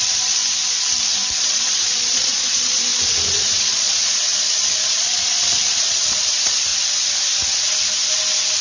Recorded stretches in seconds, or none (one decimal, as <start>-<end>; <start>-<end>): 0.4-1.4; 6.7-8.6